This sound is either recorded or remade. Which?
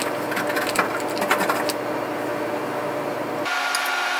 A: recorded